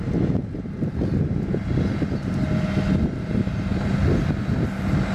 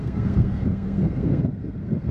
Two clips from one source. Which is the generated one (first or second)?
second